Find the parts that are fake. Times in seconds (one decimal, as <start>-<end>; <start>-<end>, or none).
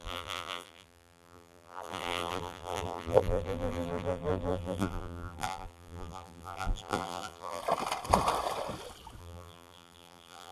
0.0-7.6; 9.2-10.5